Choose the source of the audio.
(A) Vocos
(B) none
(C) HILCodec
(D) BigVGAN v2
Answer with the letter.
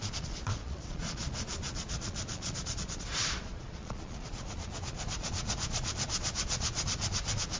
A